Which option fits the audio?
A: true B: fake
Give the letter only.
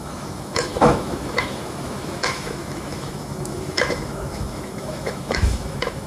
B